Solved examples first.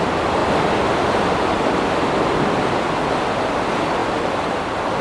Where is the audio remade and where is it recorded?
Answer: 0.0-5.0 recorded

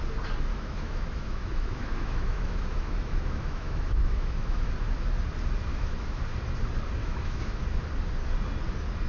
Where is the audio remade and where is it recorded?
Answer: 0.0-0.5 recorded; 0.5-4.7 remade; 4.7-5.7 recorded; 5.7-6.2 remade; 6.2-7.0 recorded; 7.0-7.6 remade; 7.6-9.1 recorded

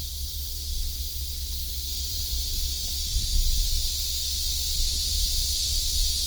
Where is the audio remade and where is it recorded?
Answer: 0.0-1.3 remade; 1.3-1.9 recorded; 1.9-2.9 remade; 2.9-5.0 recorded; 5.0-5.7 remade; 5.7-6.3 recorded

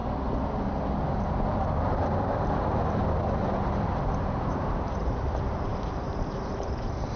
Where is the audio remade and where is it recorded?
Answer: 0.0-4.3 recorded; 4.3-7.2 remade

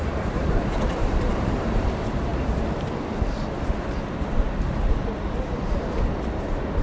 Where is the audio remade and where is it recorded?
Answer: 0.0-2.3 remade; 2.3-6.1 recorded; 6.1-6.8 remade

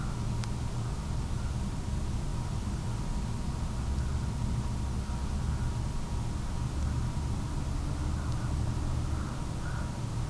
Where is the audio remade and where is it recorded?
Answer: 0.0-2.3 recorded; 2.3-3.3 remade; 3.3-10.3 recorded

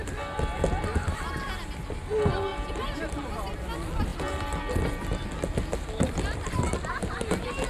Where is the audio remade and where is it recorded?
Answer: 0.0-2.5 recorded; 2.5-3.0 remade; 3.0-7.7 recorded